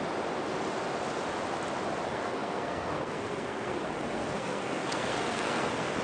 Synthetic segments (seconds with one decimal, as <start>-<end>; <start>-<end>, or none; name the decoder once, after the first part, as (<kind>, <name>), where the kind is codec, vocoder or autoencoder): 2.1-6.0 (codec, SNAC)